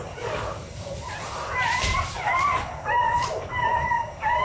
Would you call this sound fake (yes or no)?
yes